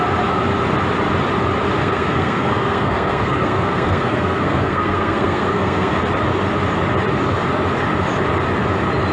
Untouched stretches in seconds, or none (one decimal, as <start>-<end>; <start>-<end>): 0.0-1.8; 6.0-9.1